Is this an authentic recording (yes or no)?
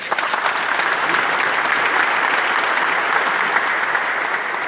yes